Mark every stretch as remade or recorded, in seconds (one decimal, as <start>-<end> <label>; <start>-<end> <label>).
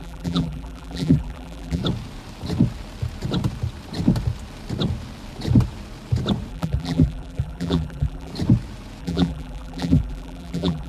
0.0-1.8 remade; 1.8-6.5 recorded; 6.5-8.3 remade; 8.3-9.0 recorded; 9.0-10.9 remade